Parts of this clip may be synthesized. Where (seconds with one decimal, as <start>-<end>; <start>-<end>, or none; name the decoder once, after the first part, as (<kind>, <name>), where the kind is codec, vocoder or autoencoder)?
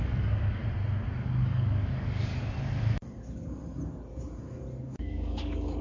0.0-0.6 (codec, DAC); 1.1-2.3; 4.8-5.8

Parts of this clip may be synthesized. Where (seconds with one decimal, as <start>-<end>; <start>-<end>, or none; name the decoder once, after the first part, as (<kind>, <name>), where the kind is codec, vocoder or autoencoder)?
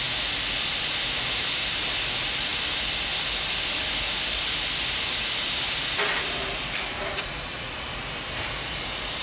none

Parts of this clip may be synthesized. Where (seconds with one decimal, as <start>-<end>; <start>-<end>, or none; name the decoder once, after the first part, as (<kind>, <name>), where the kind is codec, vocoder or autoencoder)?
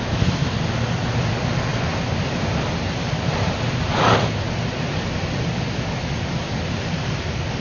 none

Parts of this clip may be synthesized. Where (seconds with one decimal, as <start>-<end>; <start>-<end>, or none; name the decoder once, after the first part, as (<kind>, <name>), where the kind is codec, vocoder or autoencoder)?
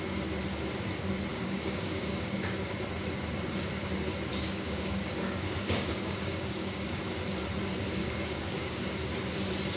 1.3-2.7 (codec, DAC); 4.3-7.0; 8.0-8.8